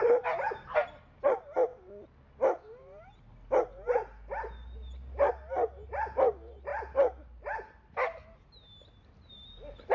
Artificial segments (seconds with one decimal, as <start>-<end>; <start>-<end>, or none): none

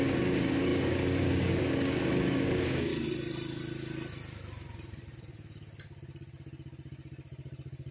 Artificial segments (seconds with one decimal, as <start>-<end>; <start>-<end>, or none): 0.0-2.9

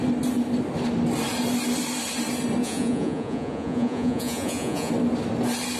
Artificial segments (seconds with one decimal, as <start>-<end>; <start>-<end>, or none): 2.6-4.9

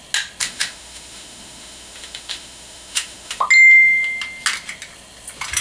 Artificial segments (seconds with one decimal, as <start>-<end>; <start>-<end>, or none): 0.4-3.4

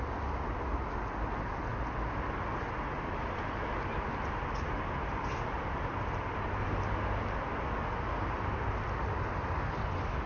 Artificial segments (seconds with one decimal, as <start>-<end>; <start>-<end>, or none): none

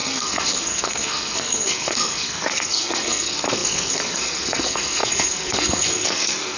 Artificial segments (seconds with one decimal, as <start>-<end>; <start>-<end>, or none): 0.0-6.6